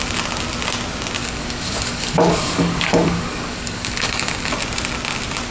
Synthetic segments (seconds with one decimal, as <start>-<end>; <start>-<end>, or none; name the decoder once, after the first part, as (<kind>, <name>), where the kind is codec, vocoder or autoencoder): 1.2-4.5 (codec, DAC)